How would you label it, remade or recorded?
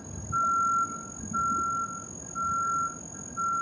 recorded